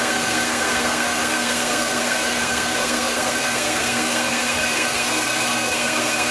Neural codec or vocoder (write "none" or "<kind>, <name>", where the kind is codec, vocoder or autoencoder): codec, SNAC